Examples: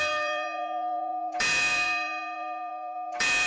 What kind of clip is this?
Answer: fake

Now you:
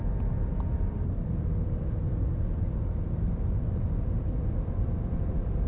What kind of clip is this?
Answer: fake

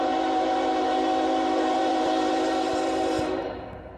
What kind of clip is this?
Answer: fake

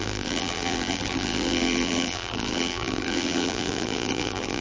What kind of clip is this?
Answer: fake